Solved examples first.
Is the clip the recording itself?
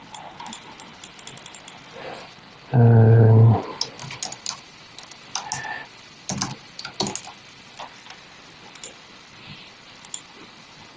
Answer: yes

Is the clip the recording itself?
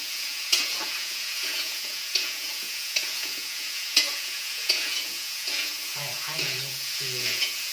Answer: no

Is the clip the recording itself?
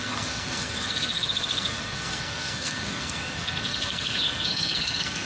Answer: no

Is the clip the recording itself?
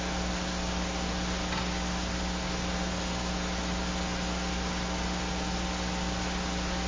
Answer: yes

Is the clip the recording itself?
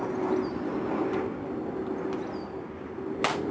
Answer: yes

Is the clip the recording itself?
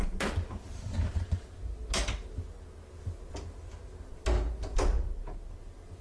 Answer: yes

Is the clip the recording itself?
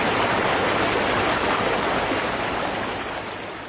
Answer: yes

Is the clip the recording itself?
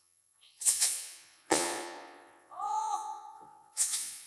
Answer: no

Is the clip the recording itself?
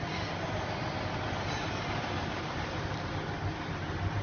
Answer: yes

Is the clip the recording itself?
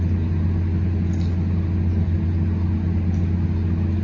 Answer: yes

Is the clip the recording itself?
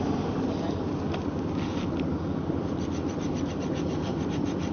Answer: yes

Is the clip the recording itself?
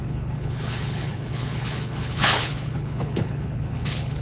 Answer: no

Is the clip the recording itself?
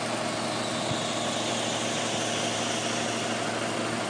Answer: yes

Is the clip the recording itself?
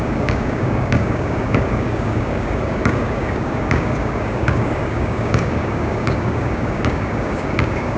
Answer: no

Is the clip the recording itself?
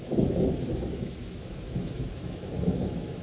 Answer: no